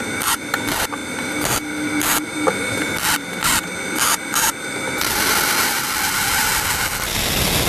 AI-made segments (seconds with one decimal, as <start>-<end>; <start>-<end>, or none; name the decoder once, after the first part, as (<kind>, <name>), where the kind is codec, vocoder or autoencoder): none